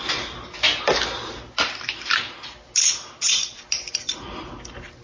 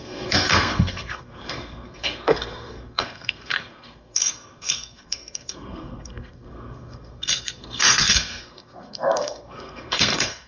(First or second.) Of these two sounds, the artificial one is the second